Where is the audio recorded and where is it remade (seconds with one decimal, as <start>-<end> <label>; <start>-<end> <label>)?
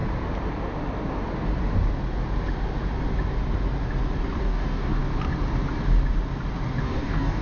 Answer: 0.0-4.4 recorded; 4.4-5.0 remade; 5.0-6.8 recorded; 6.8-7.4 remade